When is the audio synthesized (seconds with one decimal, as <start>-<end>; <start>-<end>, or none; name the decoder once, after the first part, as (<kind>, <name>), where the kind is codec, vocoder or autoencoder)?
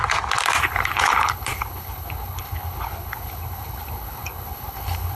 0.6-5.1 (codec, HILCodec)